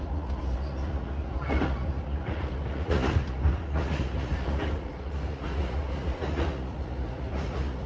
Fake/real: fake